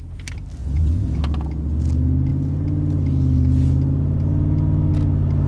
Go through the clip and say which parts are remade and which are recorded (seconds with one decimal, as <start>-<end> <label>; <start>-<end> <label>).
0.0-0.6 recorded; 0.6-1.2 remade; 1.2-5.5 recorded